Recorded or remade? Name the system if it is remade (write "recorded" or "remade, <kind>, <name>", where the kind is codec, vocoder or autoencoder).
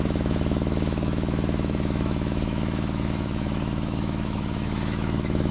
remade, autoencoder, DAC-VAE